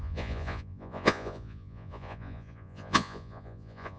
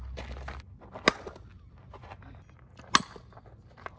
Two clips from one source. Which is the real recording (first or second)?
second